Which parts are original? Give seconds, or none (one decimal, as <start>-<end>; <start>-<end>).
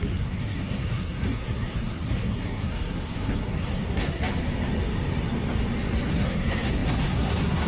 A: 4.2-6.1